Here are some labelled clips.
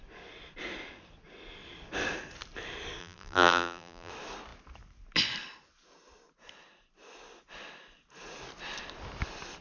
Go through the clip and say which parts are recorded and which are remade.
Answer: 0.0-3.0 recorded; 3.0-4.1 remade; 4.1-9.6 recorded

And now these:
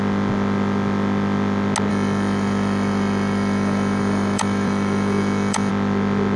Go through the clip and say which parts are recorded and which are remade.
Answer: 0.0-1.9 recorded; 1.9-5.7 remade; 5.7-6.4 recorded

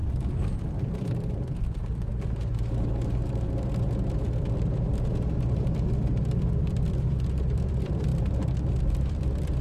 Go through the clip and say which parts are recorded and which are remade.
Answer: 0.0-1.3 recorded; 1.3-2.1 remade; 2.1-6.6 recorded; 6.6-8.1 remade; 8.1-9.0 recorded; 9.0-9.6 remade

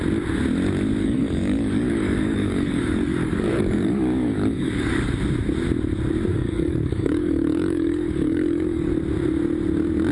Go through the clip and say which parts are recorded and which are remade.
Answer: 0.0-1.0 recorded; 1.0-5.1 remade; 5.1-6.3 recorded; 6.3-8.9 remade; 8.9-10.1 recorded

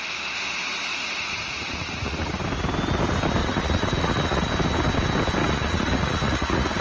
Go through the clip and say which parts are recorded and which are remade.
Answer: 0.0-0.9 recorded; 0.9-2.4 remade; 2.4-3.4 recorded; 3.4-4.5 remade; 4.5-5.4 recorded; 5.4-6.8 remade

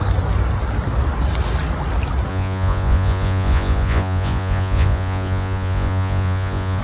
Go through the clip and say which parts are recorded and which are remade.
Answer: 0.0-2.3 recorded; 2.3-6.8 remade

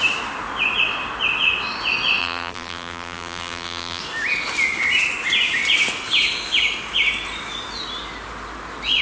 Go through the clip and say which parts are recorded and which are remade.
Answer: 0.0-2.2 recorded; 2.2-4.0 remade; 4.0-9.0 recorded

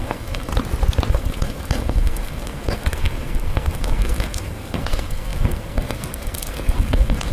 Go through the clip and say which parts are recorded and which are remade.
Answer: 0.0-0.5 remade; 0.5-1.1 recorded; 1.1-7.3 remade